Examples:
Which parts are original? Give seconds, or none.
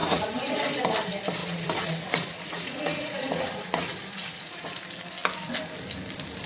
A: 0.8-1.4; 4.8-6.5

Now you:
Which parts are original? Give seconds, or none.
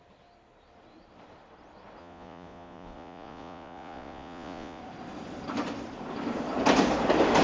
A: 0.0-2.0; 4.8-7.4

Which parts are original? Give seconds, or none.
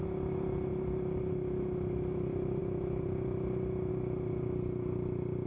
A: 0.0-5.5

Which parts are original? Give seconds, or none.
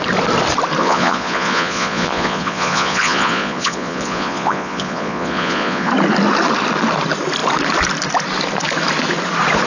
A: 0.0-0.8; 5.9-9.7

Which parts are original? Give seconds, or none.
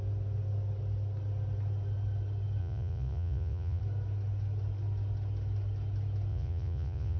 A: 0.0-2.6; 3.8-6.3